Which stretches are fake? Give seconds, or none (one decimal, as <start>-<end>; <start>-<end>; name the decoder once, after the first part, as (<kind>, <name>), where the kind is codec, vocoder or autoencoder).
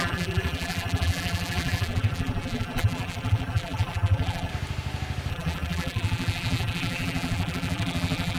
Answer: 0.0-4.5 (vocoder, BigVGAN v2); 5.3-8.4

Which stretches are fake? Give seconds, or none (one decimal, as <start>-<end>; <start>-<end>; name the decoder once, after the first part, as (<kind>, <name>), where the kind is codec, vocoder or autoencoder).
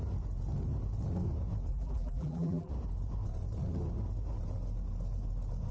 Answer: 1.7-2.7 (vocoder, BigVGAN v2)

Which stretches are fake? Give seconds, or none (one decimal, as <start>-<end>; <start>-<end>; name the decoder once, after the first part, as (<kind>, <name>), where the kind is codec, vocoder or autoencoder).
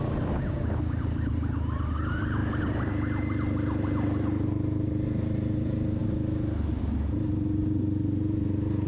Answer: none